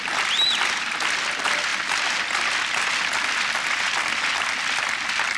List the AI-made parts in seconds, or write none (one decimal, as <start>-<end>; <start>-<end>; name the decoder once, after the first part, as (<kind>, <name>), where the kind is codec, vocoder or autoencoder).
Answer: none